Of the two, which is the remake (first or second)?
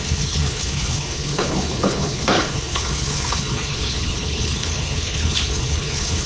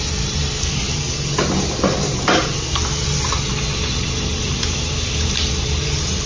first